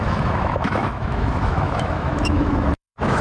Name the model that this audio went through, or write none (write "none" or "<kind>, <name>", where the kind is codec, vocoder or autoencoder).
autoencoder, DAC-VAE